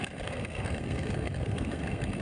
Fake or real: fake